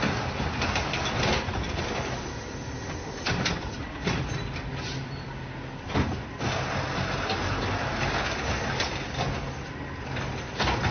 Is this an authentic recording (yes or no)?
yes